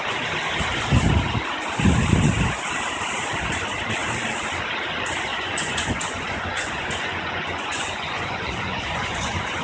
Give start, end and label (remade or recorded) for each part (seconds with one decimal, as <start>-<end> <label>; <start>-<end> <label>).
0.0-5.3 recorded; 5.3-9.6 remade